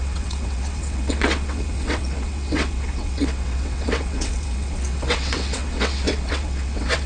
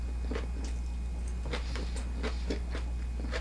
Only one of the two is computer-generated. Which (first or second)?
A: first